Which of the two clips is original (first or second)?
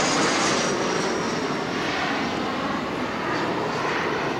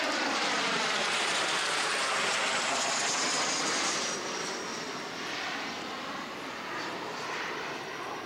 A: first